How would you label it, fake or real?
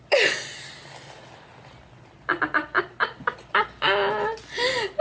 real